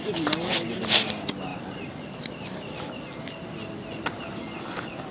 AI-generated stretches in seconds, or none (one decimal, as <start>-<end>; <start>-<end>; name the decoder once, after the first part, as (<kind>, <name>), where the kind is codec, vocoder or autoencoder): none